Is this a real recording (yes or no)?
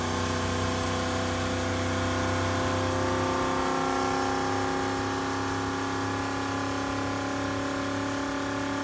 yes